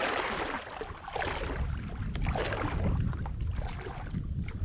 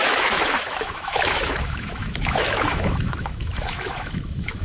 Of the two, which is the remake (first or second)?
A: second